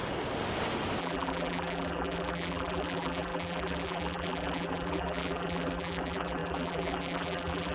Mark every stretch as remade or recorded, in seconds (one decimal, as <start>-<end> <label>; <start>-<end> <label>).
0.0-1.0 recorded; 1.0-7.7 remade